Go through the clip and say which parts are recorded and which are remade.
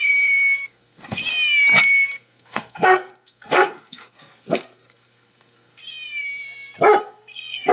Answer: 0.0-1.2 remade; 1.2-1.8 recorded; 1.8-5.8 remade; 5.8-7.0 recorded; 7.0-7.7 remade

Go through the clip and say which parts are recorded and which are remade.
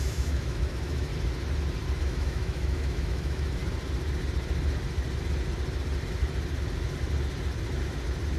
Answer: 0.0-1.1 remade; 1.1-2.0 recorded; 2.0-3.6 remade; 3.6-8.4 recorded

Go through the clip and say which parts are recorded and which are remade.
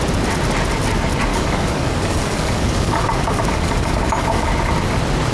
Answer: 0.0-1.3 recorded; 1.3-4.5 remade; 4.5-5.3 recorded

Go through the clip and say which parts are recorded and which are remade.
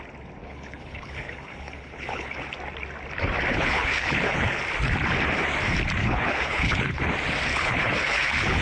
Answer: 0.0-0.4 recorded; 0.4-2.4 remade; 2.4-3.5 recorded; 3.5-4.6 remade; 4.6-6.0 recorded; 6.0-7.1 remade; 7.1-7.5 recorded; 7.5-8.6 remade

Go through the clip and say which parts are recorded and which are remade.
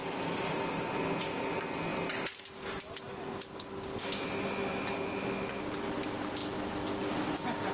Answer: 0.0-7.7 recorded